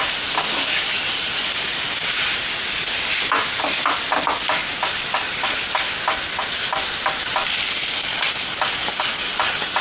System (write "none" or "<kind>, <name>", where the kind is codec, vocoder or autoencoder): none